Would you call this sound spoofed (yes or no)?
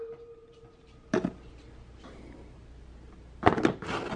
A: no